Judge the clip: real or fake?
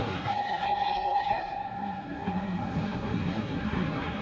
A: fake